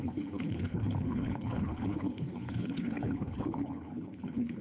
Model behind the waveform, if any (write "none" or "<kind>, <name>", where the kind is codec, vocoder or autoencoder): codec, HILCodec